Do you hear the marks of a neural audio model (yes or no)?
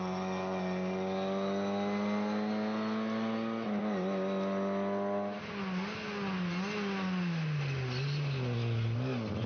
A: no